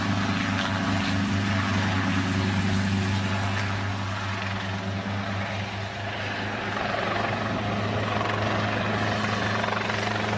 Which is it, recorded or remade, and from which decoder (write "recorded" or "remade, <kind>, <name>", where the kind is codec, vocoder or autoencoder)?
recorded